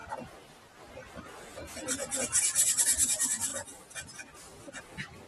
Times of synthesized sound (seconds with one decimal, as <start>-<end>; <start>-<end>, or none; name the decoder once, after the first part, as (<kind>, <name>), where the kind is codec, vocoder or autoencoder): none